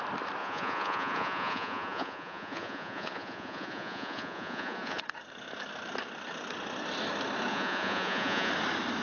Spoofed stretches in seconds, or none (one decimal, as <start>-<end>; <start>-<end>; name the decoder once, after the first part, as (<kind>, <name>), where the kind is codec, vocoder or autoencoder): 0.4-5.0 (vocoder, Vocos); 7.5-8.5